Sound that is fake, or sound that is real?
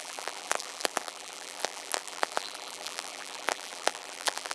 fake